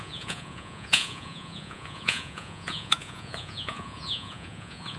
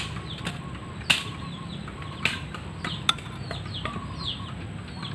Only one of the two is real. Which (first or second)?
second